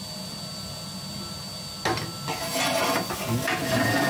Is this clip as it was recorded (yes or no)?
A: yes